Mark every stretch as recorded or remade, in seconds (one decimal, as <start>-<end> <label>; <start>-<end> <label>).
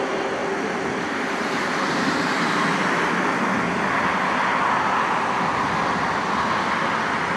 0.0-0.4 recorded; 0.4-2.5 remade; 2.5-7.4 recorded